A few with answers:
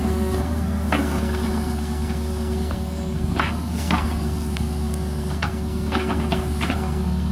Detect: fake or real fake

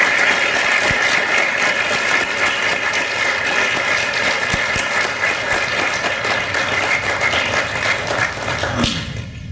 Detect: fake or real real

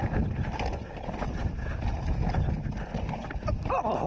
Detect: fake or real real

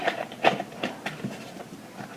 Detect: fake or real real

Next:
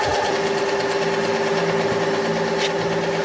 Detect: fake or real real